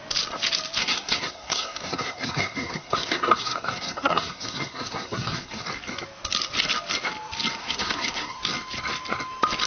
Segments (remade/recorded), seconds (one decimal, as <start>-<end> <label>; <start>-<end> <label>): 0.0-0.8 recorded; 0.8-5.6 remade; 5.6-7.6 recorded; 7.6-8.4 remade; 8.4-9.7 recorded